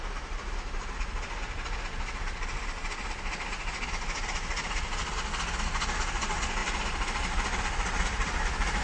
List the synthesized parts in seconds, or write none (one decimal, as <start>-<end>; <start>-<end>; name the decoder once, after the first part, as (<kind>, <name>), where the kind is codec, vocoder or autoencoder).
none